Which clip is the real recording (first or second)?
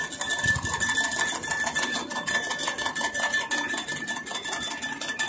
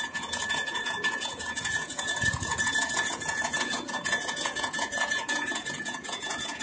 first